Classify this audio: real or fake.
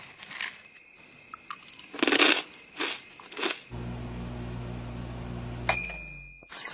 real